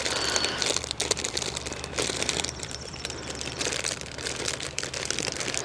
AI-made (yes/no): yes